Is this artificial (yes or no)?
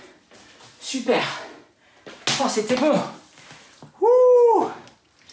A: no